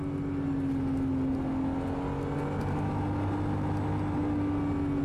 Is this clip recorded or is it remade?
recorded